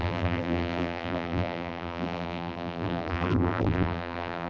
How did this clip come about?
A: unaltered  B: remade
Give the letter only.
B